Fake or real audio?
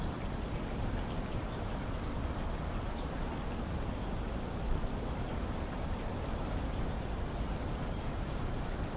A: fake